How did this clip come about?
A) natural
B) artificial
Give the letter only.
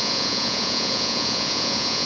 B